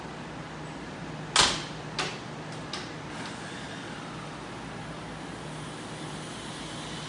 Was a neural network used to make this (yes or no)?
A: no